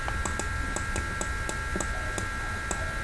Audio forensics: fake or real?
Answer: real